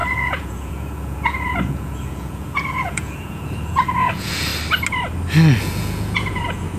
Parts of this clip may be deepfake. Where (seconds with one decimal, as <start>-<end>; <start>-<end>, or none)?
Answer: 0.0-4.5; 5.6-6.8